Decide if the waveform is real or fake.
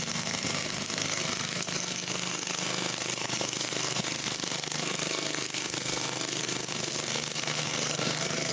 fake